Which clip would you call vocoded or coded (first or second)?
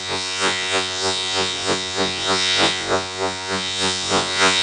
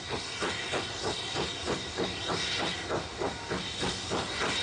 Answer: first